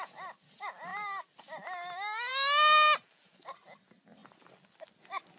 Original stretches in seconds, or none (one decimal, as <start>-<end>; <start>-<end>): 0.0-5.4